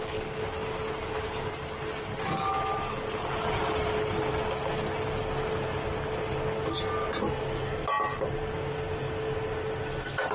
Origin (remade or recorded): recorded